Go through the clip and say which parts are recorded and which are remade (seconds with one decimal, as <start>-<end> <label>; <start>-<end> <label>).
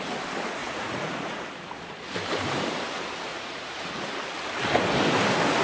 0.0-0.6 recorded; 0.6-1.5 remade; 1.5-3.3 recorded; 3.3-3.9 remade; 3.9-5.6 recorded